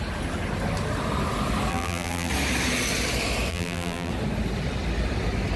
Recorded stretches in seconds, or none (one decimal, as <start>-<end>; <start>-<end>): 0.0-1.7; 2.3-3.5; 4.1-5.6